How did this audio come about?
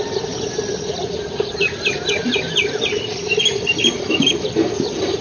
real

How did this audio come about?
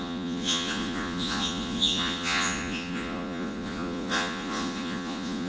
fake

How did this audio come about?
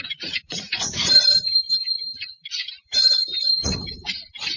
fake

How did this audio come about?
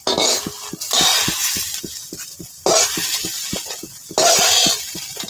real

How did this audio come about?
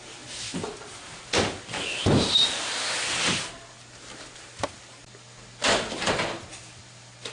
real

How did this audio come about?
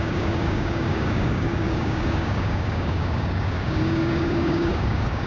fake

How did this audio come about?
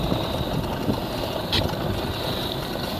real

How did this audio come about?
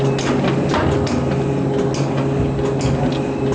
real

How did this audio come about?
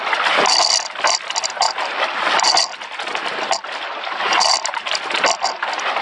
real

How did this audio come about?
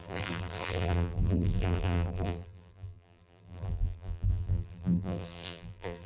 fake